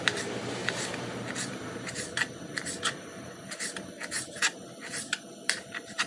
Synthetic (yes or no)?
yes